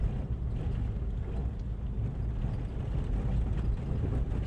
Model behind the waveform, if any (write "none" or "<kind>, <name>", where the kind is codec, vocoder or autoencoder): none